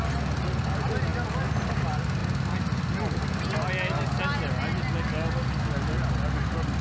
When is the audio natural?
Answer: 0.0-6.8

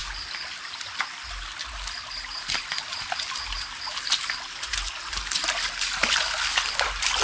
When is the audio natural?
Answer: 0.0-7.2

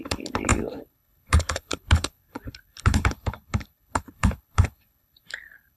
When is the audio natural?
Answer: none

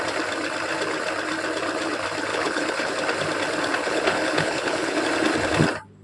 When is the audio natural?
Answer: 0.0-2.3; 2.9-3.8; 5.0-6.0

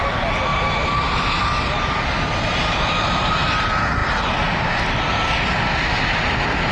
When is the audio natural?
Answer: 0.0-6.7

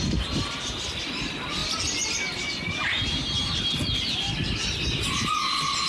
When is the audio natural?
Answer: 0.0-5.9